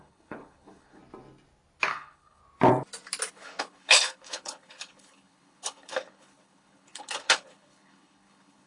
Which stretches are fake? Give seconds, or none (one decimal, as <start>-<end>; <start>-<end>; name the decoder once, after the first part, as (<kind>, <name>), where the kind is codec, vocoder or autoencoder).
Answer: 0.0-1.0 (codec, HILCodec); 1.9-2.4; 3.3-8.7